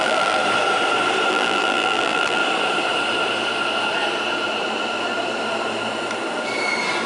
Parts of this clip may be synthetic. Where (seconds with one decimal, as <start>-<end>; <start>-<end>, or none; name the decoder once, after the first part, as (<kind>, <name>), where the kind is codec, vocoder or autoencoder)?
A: 0.0-0.4 (vocoder, BigVGAN v2); 1.3-2.4